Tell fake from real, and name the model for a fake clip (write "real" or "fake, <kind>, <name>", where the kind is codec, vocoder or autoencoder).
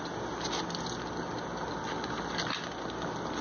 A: real